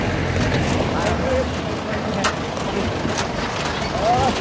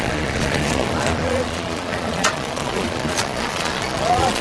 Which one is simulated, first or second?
second